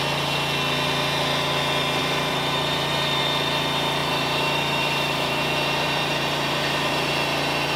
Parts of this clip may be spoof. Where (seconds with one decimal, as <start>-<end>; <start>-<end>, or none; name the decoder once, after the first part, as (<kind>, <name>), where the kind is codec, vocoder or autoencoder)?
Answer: 2.0-3.2 (vocoder, BigVGAN v2); 4.0-7.1